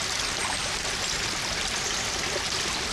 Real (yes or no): yes